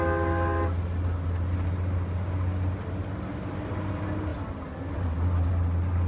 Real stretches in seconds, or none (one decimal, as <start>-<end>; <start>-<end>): 0.0-6.1